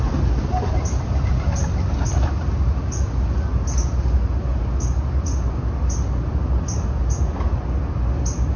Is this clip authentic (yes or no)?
yes